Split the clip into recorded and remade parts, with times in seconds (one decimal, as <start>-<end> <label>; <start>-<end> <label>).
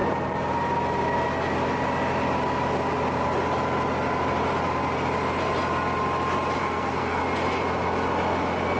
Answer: 0.0-6.6 recorded; 6.6-7.2 remade; 7.2-8.8 recorded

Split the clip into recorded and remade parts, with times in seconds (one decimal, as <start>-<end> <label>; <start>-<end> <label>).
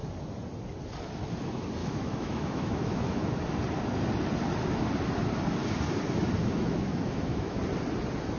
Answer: 0.0-1.8 recorded; 1.8-3.3 remade; 3.3-6.4 recorded; 6.4-7.6 remade; 7.6-8.4 recorded